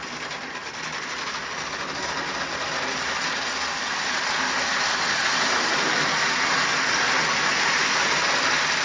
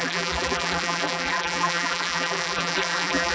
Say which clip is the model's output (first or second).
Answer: second